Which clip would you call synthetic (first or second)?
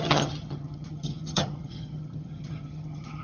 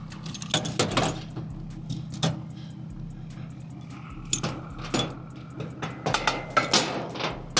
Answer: first